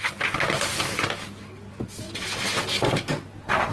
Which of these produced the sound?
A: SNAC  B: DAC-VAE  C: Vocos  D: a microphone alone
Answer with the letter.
D